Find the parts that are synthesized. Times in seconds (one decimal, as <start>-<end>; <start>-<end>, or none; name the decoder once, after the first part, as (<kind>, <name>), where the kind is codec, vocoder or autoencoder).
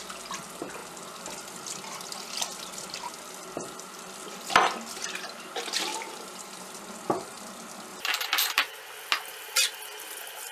5.9-6.8 (vocoder, BigVGAN v2); 7.9-8.8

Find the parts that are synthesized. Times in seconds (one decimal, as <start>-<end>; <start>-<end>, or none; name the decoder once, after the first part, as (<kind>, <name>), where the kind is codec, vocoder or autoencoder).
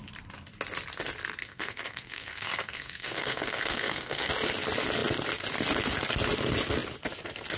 1.4-4.3 (codec, SNAC)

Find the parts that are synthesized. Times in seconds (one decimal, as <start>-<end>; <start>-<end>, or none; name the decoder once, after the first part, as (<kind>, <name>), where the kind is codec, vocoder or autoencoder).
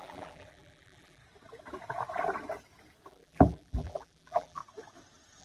0.0-1.2 (vocoder, BigVGAN v2); 3.1-4.6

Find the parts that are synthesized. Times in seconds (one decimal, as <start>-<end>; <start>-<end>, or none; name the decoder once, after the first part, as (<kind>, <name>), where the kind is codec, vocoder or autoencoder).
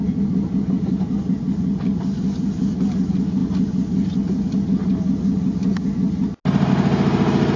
none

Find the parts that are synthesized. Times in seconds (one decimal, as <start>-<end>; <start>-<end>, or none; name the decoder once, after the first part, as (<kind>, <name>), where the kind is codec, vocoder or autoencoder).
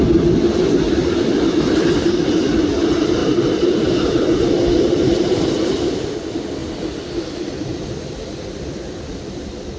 0.0-3.2 (vocoder, BigVGAN v2); 4.8-6.6; 7.4-9.8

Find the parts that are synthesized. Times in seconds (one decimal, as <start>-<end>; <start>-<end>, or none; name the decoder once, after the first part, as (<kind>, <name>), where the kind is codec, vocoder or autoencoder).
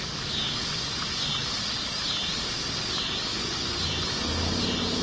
0.6-1.3 (vocoder, Vocos); 3.3-3.9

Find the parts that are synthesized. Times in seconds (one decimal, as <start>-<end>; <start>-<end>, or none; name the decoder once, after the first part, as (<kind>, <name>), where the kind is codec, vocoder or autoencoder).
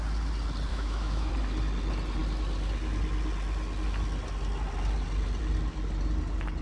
0.7-1.3 (autoencoder, DAC-VAE)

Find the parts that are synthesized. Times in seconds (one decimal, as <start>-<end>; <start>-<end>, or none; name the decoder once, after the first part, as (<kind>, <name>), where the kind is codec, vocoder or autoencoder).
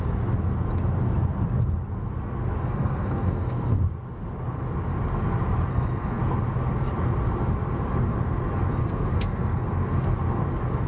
2.6-3.8 (codec, SNAC); 5.7-6.2; 8.7-10.0